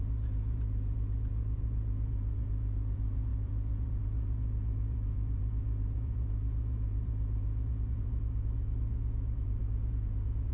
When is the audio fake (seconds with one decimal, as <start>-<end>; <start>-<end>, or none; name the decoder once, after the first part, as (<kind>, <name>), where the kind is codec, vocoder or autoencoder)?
0.0-10.5 (vocoder, Vocos)